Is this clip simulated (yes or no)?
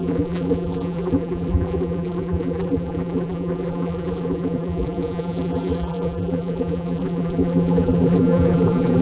yes